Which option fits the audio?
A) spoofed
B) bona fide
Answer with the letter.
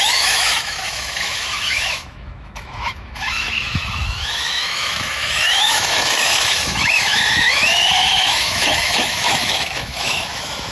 A